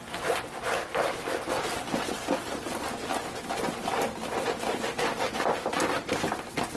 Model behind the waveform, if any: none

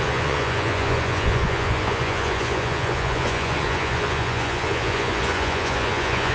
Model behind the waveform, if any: vocoder, Vocos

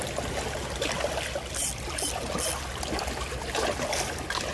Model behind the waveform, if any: none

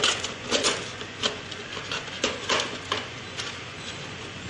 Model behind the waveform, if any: vocoder, Vocos